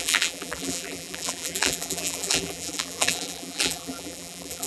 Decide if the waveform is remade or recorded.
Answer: remade